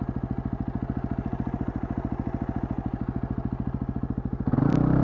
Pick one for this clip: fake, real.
real